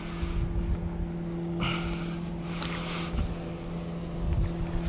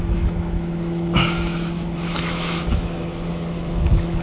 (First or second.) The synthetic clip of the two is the second